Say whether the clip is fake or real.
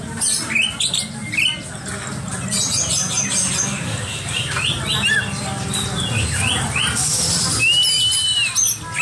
real